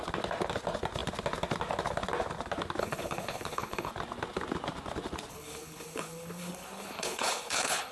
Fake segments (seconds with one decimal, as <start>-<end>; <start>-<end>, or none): 2.8-3.9; 5.3-7.9